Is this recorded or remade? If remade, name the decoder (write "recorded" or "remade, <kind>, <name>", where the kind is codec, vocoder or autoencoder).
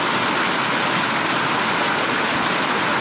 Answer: recorded